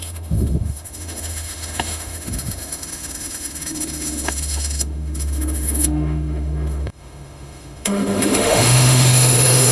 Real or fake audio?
fake